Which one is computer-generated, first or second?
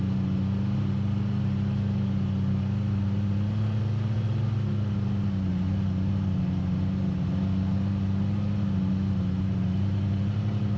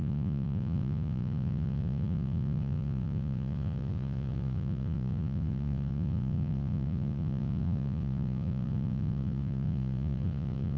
second